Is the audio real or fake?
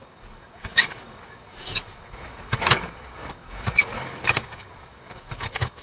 fake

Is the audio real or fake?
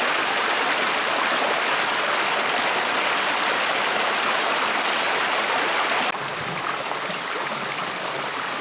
real